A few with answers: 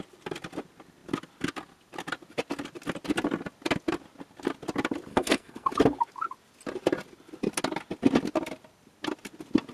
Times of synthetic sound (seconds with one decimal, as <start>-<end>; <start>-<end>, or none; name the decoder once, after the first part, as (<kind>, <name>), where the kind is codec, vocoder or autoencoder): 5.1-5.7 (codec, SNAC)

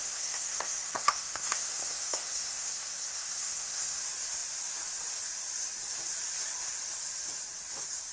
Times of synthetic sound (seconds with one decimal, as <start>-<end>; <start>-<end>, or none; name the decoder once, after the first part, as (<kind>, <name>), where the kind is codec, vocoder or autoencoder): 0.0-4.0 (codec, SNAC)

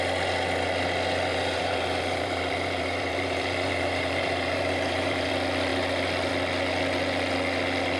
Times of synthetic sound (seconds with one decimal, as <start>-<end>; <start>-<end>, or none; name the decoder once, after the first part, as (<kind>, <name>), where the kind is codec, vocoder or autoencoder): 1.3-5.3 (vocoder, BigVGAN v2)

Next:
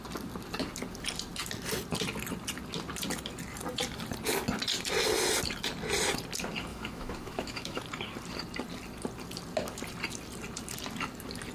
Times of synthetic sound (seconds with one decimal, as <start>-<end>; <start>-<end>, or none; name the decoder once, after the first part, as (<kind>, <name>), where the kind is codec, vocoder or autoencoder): 6.7-7.8 (autoencoder, DAC-VAE)